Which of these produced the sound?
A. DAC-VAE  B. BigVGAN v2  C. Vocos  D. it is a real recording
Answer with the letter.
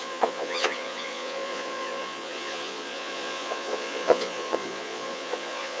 C